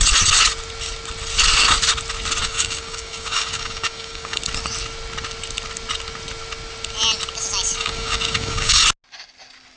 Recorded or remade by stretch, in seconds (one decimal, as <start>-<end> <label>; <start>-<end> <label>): 0.0-2.4 recorded; 2.4-4.4 remade; 4.4-7.8 recorded; 7.8-8.8 remade; 8.8-9.8 recorded